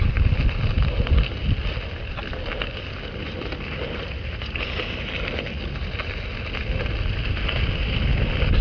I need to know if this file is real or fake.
real